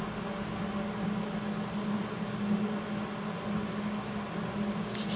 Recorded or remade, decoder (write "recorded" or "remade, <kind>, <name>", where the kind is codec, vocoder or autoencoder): recorded